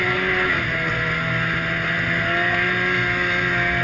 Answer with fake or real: real